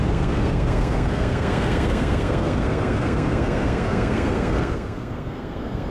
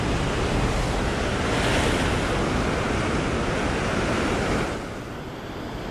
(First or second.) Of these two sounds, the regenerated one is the first